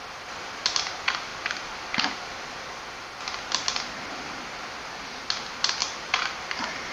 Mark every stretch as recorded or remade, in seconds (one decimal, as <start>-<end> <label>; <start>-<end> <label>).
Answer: 0.0-5.8 recorded; 5.8-6.9 remade